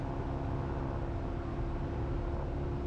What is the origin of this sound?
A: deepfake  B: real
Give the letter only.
B